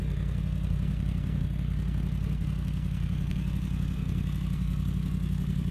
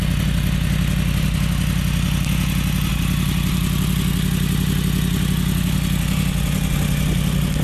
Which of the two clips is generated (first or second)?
first